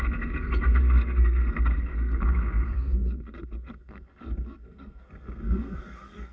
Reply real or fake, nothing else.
fake